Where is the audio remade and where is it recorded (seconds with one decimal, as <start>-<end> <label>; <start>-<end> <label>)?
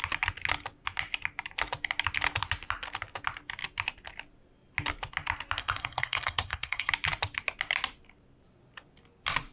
0.0-5.6 recorded; 5.6-6.9 remade; 6.9-9.5 recorded